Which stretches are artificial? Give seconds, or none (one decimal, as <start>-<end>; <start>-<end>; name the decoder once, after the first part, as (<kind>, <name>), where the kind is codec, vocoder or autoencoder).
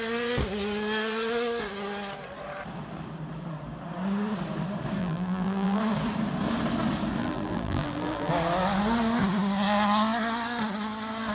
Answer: 5.0-5.8 (vocoder, BigVGAN v2); 7.2-8.3